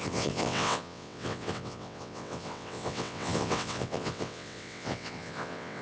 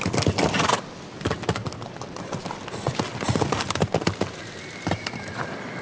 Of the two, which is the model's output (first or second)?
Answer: first